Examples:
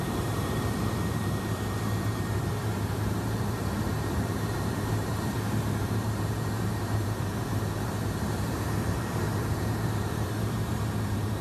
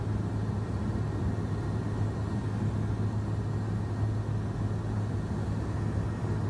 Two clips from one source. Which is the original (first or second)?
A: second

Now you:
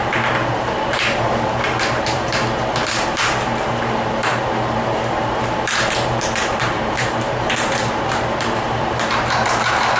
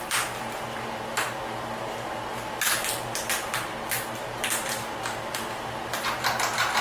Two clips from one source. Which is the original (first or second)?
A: second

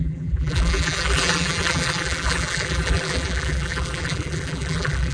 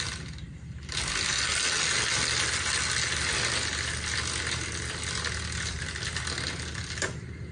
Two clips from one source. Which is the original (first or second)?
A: second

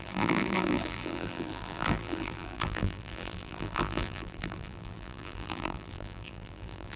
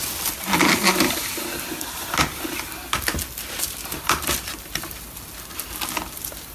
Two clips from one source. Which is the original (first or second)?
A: second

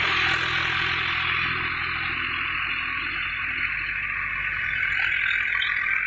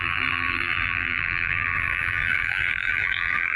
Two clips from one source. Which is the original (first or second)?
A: first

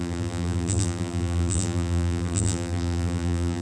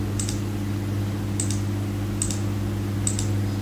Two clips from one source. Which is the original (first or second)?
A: second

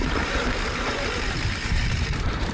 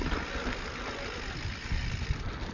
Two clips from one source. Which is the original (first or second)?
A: second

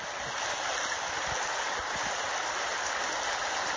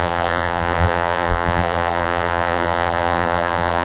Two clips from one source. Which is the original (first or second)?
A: first